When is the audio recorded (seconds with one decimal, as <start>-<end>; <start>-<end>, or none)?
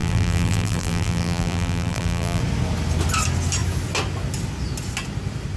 2.4-5.6